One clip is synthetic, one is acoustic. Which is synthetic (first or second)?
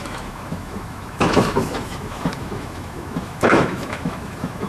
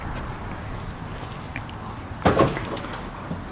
first